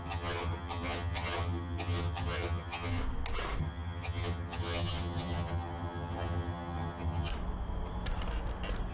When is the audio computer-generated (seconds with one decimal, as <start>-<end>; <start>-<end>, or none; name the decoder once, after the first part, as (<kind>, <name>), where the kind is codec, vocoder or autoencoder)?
0.0-3.0 (vocoder, HiFi-GAN); 3.6-7.3